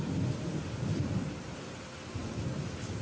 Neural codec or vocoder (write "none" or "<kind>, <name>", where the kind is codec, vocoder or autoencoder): none